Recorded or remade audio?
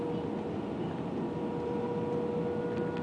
recorded